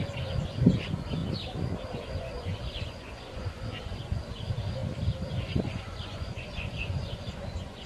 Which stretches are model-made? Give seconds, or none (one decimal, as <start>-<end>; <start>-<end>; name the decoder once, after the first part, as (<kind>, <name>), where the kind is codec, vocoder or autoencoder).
0.0-1.2 (vocoder, Vocos); 1.9-4.8; 5.3-7.9